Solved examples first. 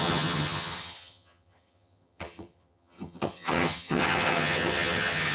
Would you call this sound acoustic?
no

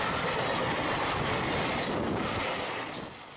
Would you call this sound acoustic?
yes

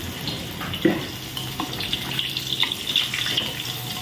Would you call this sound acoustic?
yes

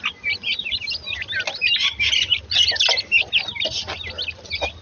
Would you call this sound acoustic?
yes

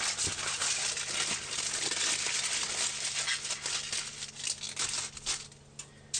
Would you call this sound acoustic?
yes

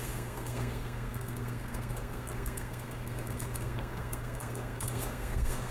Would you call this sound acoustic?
no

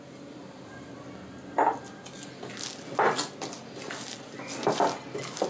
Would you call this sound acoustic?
yes